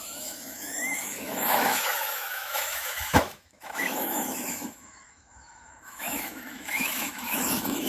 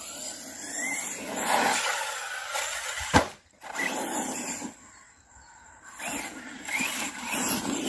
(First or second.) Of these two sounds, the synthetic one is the first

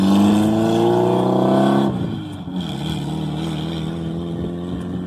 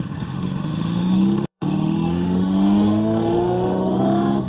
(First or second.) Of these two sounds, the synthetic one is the second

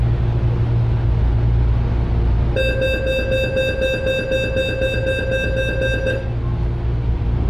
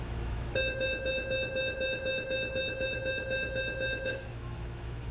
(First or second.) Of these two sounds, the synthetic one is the second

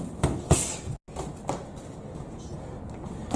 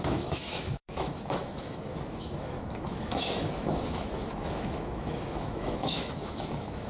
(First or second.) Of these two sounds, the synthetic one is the second